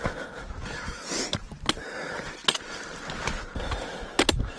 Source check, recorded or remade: recorded